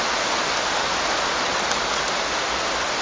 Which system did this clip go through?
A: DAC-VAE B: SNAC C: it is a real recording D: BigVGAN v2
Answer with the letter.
C